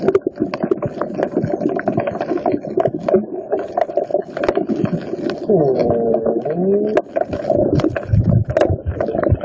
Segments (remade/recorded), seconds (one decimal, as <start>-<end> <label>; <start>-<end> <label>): 0.0-4.1 recorded; 4.1-4.7 remade; 4.7-9.4 recorded